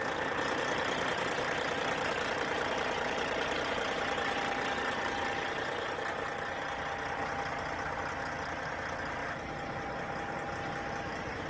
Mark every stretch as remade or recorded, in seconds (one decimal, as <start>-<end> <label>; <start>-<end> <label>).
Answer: 0.0-11.5 recorded